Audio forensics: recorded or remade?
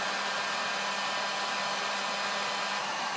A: recorded